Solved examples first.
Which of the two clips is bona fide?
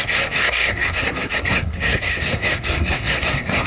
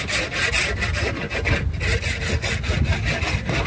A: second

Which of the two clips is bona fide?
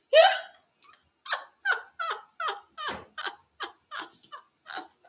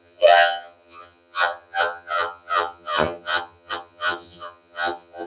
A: first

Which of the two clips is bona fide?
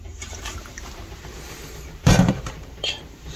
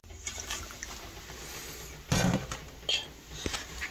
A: second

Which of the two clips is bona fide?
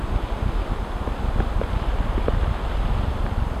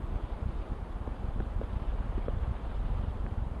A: first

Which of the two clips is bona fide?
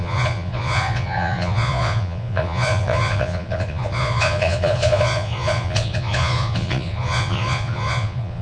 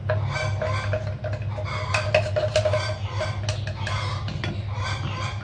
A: second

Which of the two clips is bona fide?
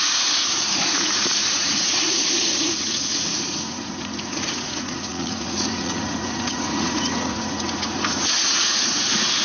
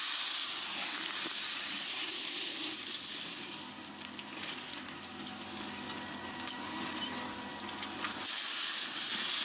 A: second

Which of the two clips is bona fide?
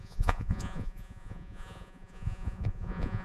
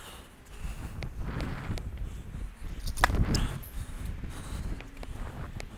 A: second